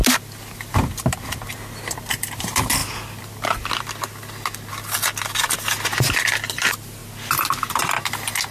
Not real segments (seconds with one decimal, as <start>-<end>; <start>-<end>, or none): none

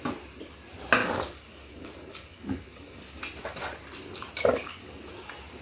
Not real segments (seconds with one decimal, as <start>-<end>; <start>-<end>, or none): 1.0-3.2; 4.5-5.1

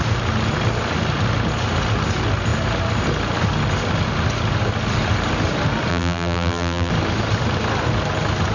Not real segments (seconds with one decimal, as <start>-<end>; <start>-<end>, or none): 5.9-6.9

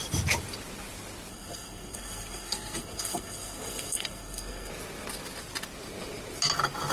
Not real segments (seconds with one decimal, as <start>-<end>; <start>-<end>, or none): 1.3-4.7

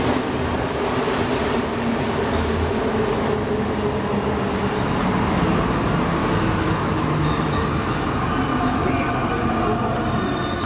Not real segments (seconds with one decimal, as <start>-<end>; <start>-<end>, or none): 6.2-8.0; 8.5-9.4

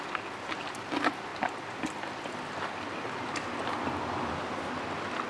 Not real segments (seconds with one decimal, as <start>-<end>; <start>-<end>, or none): none